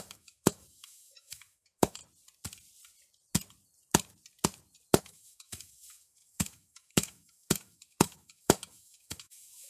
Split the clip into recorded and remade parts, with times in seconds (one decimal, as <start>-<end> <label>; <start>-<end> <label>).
0.0-2.0 remade; 2.0-5.0 recorded; 5.0-9.7 remade